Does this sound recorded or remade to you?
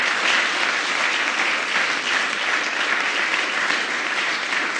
recorded